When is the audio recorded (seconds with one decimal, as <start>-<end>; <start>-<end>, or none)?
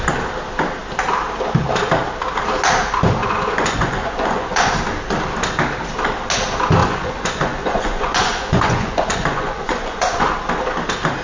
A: 0.0-3.2; 4.7-6.8; 10.3-11.2